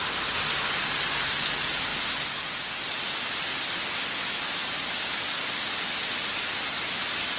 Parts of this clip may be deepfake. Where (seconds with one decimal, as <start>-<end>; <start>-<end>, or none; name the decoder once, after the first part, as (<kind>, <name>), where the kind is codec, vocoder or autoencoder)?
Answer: none